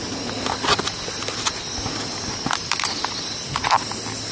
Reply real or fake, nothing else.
real